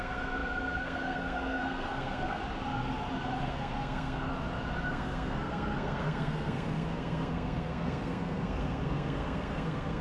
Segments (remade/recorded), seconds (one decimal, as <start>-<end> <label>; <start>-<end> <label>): 0.0-2.4 remade; 2.4-3.4 recorded; 3.4-4.3 remade; 4.3-4.9 recorded; 4.9-10.0 remade